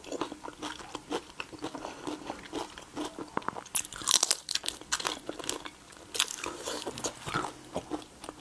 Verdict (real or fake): real